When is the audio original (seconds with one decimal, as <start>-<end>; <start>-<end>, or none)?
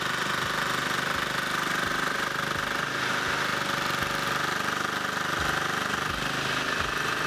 0.0-7.3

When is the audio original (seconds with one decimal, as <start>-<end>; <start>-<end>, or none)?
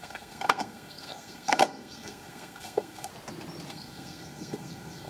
3.1-3.7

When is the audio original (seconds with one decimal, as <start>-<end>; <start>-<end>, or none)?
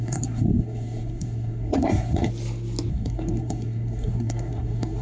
2.3-2.9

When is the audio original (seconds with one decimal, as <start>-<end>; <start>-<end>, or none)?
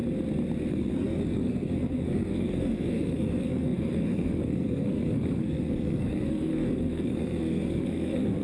0.0-0.7